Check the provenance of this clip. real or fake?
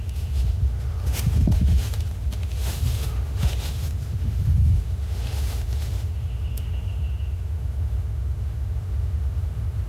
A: fake